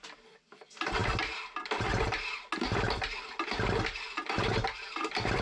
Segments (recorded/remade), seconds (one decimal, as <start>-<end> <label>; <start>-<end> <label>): 0.0-5.4 recorded